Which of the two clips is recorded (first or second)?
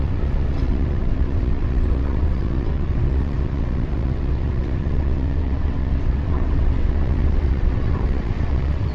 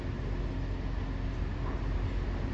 second